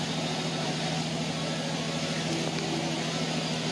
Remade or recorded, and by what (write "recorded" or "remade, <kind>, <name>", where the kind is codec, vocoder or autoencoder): recorded